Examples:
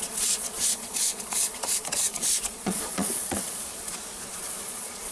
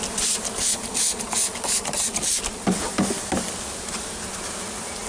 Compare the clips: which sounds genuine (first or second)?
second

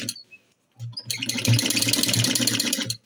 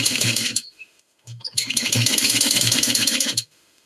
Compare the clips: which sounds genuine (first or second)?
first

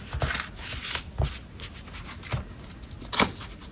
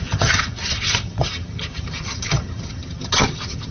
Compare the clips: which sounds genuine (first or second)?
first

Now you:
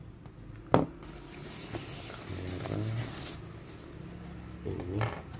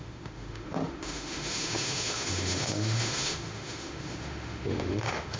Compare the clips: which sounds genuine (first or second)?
first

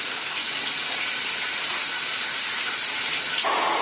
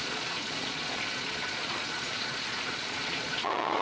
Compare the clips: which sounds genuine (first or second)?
first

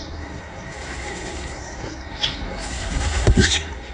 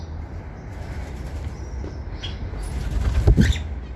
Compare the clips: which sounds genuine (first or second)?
second